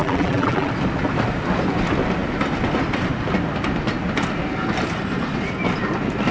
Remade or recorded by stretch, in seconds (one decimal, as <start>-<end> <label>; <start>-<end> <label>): 0.0-0.7 remade; 0.7-6.3 recorded